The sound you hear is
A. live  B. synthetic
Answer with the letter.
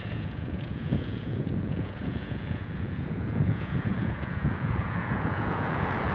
B